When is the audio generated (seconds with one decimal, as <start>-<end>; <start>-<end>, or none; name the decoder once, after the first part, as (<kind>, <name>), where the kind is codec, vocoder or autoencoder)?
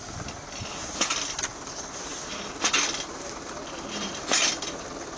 none